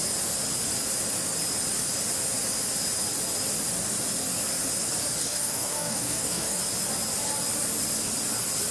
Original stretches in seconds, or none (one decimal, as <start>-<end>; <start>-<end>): 0.0-5.2; 6.6-8.7